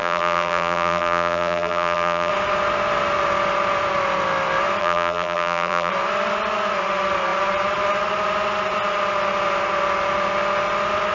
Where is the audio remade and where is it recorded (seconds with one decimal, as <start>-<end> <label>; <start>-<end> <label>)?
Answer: 0.0-2.3 remade; 2.3-4.8 recorded; 4.8-5.9 remade; 5.9-11.1 recorded